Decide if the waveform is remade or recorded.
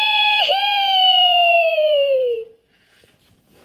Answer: remade